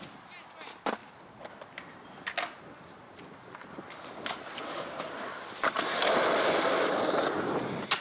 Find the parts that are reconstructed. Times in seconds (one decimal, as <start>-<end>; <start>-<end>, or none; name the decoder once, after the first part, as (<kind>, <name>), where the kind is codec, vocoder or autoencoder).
none